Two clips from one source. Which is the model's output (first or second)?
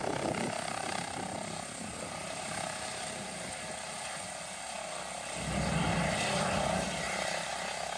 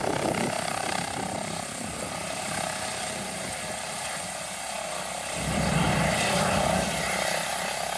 second